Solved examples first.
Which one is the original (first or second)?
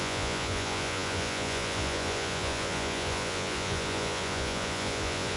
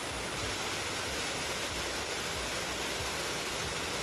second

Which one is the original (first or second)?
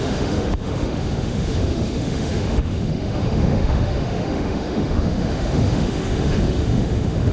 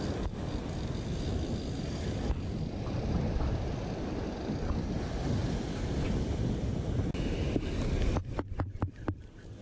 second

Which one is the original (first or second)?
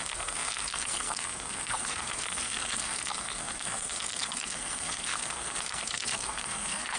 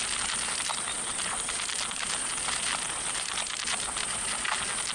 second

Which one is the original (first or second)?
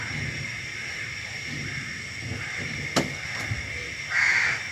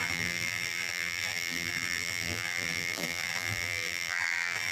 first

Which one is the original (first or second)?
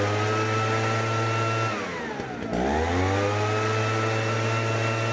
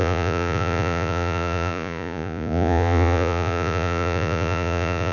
first